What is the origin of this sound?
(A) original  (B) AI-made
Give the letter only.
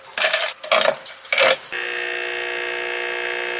A